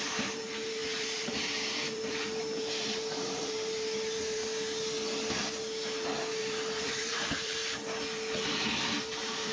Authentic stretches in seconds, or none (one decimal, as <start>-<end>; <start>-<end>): 4.4-6.4; 7.6-8.4

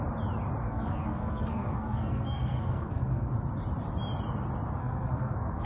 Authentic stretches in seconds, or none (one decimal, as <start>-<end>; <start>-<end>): 0.0-0.6; 3.3-4.8

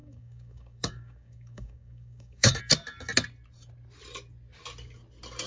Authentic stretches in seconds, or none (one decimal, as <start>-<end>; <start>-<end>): 2.6-5.5

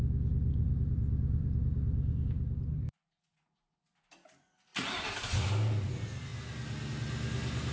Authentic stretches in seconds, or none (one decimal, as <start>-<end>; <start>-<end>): 0.0-0.5; 2.9-7.7

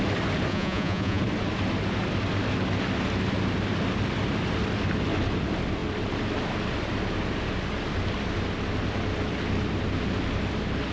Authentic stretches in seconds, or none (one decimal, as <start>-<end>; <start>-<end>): 0.0-0.5; 1.2-10.9

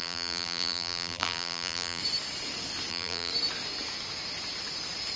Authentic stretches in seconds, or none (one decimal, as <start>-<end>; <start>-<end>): 2.0-2.9; 3.3-5.2

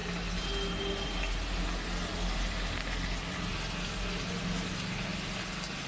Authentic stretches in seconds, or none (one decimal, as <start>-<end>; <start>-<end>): 0.0-5.9